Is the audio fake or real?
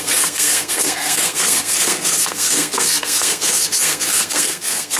fake